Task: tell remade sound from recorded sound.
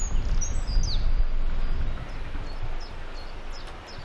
recorded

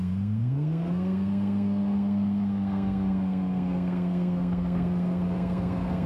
remade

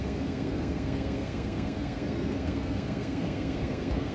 remade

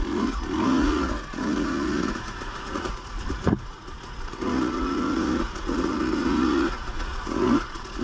remade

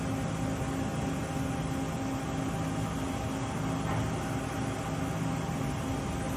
recorded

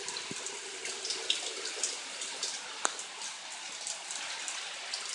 recorded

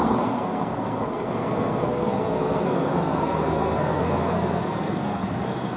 remade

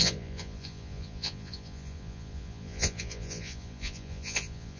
remade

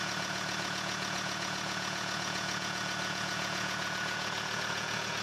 remade